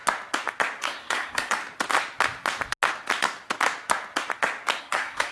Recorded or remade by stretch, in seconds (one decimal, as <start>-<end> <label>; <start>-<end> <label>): 0.0-0.8 recorded; 0.8-1.6 remade; 1.6-4.8 recorded; 4.8-5.3 remade